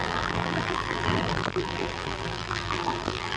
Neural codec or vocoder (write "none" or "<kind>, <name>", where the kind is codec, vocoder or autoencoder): vocoder, BigVGAN v2